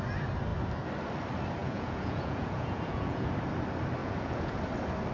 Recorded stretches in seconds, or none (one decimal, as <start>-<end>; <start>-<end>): 0.0-1.6; 3.3-4.0; 4.6-5.1